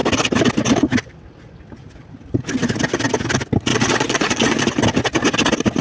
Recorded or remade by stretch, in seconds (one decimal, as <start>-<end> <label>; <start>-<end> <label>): 0.0-3.7 recorded; 3.7-4.6 remade; 4.6-5.8 recorded

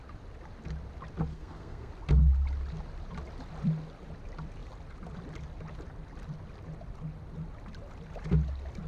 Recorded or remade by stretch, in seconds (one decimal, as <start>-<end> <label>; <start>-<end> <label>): 0.0-1.3 recorded; 1.3-1.9 remade; 1.9-8.9 recorded

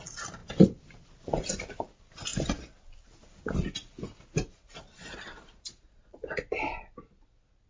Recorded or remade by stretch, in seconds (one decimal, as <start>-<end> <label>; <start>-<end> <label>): 0.0-4.5 recorded; 4.5-6.4 remade; 6.4-7.7 recorded

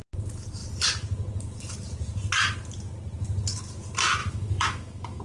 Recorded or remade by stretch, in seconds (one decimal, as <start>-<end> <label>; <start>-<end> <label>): 0.0-4.2 recorded; 4.2-5.2 remade